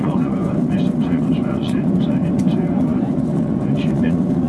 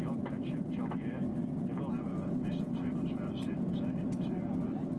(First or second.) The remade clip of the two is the first